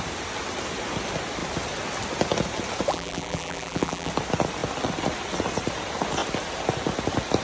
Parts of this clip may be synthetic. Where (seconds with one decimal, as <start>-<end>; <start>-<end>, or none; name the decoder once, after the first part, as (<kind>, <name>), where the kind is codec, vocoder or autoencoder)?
2.9-4.1 (vocoder, BigVGAN v2)